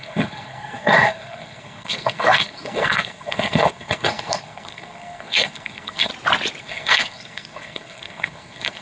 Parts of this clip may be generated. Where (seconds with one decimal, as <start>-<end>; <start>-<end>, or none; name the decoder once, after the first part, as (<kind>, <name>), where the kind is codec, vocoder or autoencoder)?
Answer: 0.0-6.1 (codec, SNAC); 6.6-8.8